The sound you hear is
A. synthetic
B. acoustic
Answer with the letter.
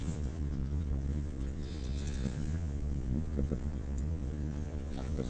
A